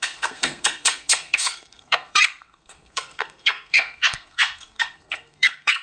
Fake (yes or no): yes